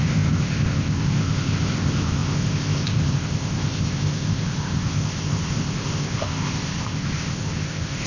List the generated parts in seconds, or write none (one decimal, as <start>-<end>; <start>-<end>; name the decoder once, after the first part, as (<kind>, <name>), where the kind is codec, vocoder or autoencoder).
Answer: 0.0-8.1 (codec, ZipCodec)